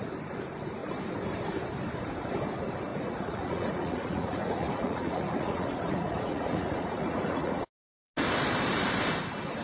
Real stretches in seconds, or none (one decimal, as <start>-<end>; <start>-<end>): 0.0-2.9; 8.1-9.6